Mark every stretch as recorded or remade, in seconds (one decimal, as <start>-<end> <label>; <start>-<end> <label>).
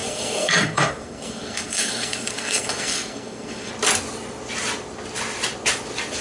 0.0-3.7 remade; 3.7-6.2 recorded